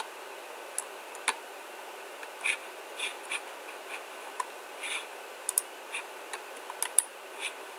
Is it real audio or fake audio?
real